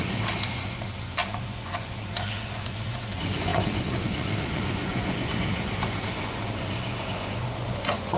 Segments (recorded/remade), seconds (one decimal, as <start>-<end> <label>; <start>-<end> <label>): 0.0-8.2 remade